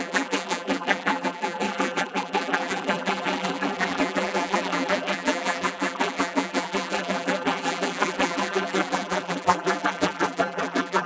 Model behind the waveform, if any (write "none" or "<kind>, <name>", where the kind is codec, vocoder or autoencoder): vocoder, BigVGAN v2